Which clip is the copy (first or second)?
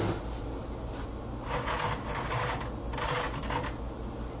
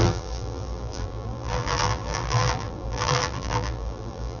second